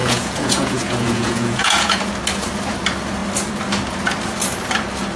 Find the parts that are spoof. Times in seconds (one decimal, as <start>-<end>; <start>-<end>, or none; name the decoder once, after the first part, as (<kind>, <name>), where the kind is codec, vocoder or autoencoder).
0.0-2.0 (vocoder, Vocos)